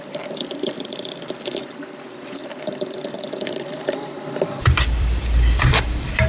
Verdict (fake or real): fake